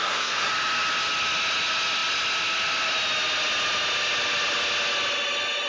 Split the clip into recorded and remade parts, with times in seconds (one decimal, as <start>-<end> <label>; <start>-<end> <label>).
0.0-0.5 remade; 0.5-5.7 recorded